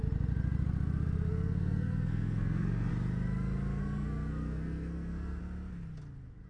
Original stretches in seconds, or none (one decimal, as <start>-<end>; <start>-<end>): 0.0-1.3; 2.9-3.8; 5.4-6.5